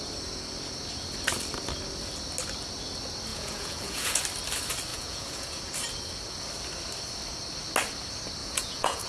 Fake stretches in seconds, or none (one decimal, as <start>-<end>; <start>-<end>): 3.3-4.2; 4.9-5.6; 8.4-9.1